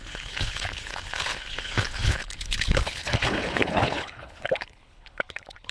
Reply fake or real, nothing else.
fake